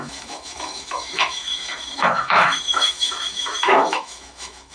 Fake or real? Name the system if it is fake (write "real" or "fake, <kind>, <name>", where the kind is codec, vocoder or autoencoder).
fake, autoencoder, DAC-VAE